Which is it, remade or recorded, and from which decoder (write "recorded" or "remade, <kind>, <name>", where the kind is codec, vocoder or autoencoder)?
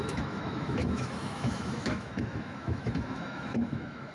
remade, autoencoder, DAC-VAE